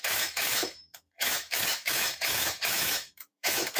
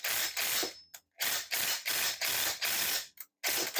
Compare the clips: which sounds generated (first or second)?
first